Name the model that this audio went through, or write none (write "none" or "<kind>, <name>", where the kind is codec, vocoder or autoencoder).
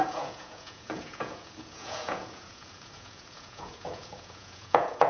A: vocoder, Vocos